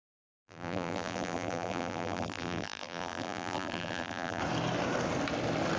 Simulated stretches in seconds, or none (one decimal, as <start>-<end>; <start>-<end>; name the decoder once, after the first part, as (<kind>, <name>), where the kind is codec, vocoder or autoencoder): 0.0-4.4 (vocoder, BigVGAN v2)